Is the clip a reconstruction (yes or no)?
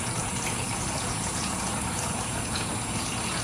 yes